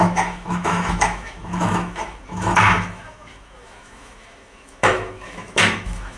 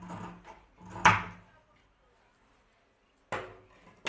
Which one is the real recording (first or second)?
second